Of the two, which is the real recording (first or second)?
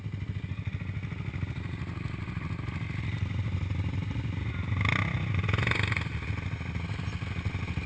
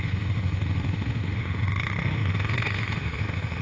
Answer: first